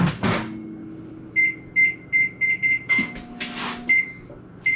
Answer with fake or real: real